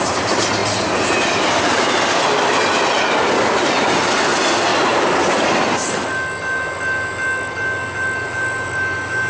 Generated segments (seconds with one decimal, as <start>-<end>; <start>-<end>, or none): none